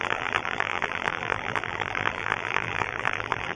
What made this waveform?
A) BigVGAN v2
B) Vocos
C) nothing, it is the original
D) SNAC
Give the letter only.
A